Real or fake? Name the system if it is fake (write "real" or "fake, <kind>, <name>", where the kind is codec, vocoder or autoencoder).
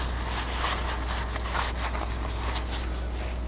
real